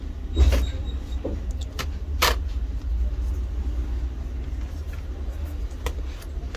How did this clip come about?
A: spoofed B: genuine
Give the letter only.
B